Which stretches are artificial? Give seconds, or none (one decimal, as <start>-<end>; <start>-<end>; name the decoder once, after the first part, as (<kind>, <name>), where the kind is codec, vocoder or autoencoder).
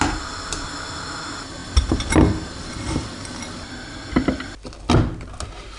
none